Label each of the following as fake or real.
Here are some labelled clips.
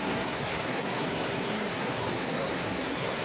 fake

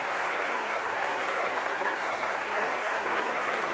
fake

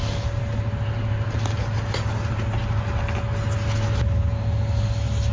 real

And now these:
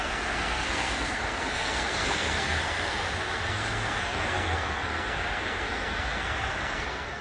fake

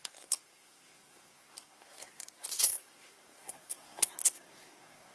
fake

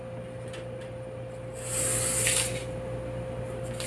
real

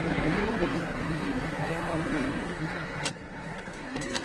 fake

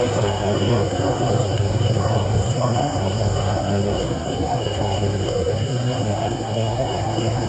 fake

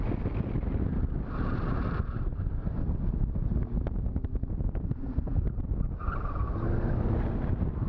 real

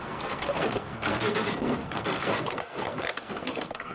fake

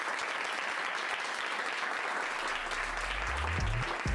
real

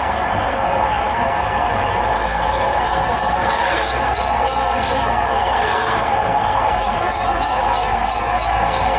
fake